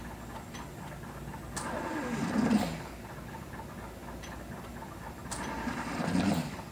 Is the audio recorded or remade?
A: recorded